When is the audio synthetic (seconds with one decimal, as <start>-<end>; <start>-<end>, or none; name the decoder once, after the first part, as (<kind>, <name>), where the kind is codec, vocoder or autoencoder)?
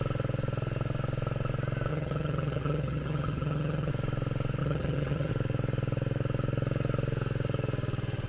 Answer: 1.9-3.9 (vocoder, HiFi-GAN); 4.6-5.3